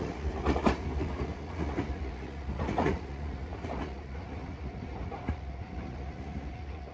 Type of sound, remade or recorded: remade